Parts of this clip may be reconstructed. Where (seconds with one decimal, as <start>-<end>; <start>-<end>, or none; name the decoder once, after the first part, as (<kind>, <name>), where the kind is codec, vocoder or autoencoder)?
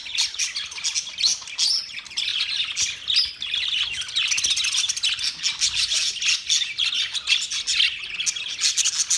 none